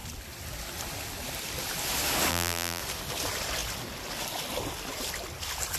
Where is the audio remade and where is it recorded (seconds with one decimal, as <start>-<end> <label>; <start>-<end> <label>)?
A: 0.0-2.3 recorded; 2.3-2.8 remade; 2.8-5.8 recorded